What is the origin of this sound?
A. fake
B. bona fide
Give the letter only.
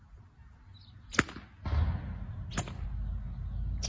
B